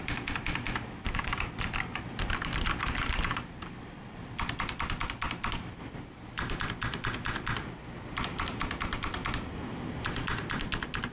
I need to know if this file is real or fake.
real